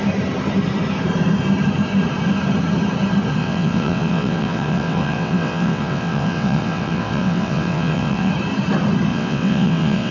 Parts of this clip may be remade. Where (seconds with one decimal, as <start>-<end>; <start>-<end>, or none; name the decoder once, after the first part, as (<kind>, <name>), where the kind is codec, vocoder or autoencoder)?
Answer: 3.4-8.3 (vocoder, WaveNeXt); 9.1-10.1